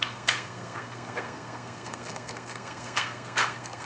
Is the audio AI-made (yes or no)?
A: yes